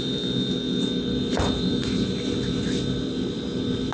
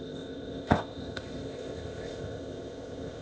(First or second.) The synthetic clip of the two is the second